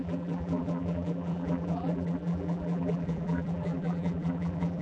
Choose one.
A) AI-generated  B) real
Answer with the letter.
A